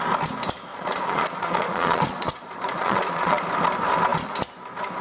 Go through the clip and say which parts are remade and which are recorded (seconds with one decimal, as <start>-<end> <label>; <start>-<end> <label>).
0.0-0.7 recorded; 0.7-3.4 remade; 3.4-5.0 recorded